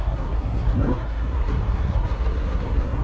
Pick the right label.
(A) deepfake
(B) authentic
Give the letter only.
A